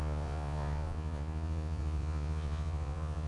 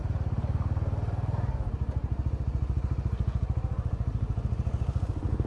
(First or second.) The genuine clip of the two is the second